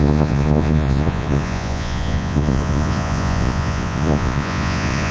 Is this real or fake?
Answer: fake